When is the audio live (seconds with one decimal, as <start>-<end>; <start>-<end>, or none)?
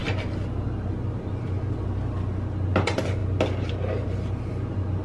0.0-5.0